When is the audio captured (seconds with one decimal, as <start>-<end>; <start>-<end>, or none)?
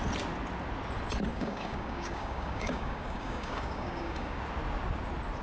0.0-1.3; 4.4-5.4